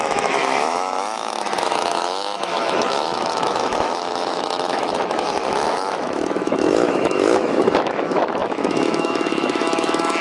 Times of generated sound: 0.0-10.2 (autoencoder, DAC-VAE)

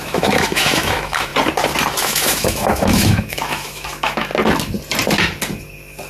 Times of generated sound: 0.0-1.3 (autoencoder, DAC-VAE); 2.0-4.3

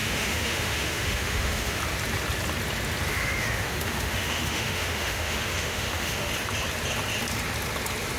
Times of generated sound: 0.0-1.8 (autoencoder, DAC-VAE); 3.1-6.3

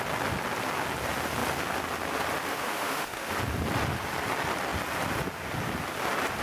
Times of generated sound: 2.5-3.3 (autoencoder, DAC-VAE)

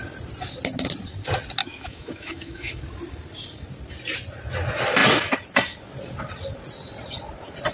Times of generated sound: 1.6-2.8 (autoencoder, DAC-VAE)

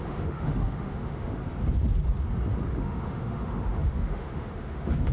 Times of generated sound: 0.0-1.4 (autoencoder, DAC-VAE); 2.7-5.1

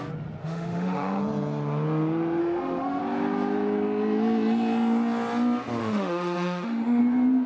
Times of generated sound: 0.4-1.2 (autoencoder, DAC-VAE); 2.4-3.0; 5.8-7.0